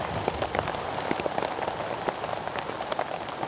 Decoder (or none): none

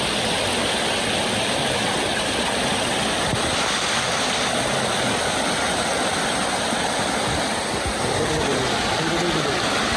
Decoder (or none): none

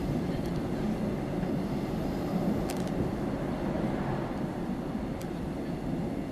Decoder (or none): none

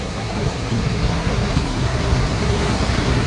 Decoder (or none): codec, SNAC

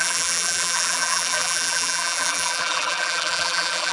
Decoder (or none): vocoder, BigVGAN v2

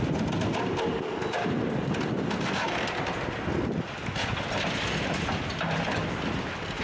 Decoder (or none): none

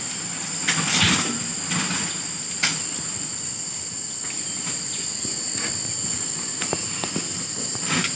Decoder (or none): none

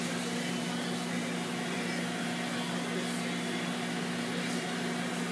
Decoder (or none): none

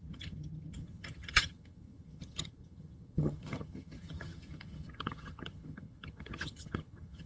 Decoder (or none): vocoder, HiFi-GAN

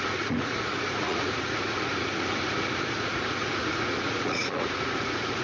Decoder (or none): vocoder, Vocos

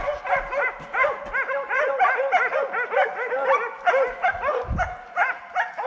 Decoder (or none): none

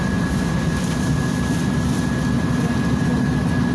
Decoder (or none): none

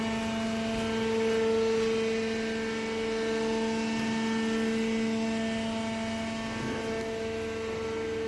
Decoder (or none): none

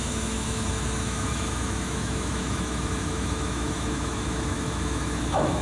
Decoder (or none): autoencoder, DAC-VAE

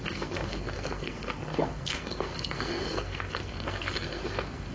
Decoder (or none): codec, SNAC